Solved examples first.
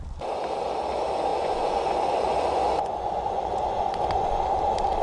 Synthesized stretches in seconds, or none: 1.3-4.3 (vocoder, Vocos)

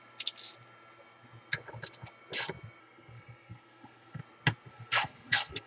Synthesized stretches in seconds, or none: 2.8-4.2 (codec, SNAC); 4.7-5.7

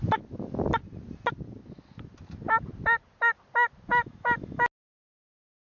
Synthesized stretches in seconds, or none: 3.9-4.6 (autoencoder, DAC-VAE)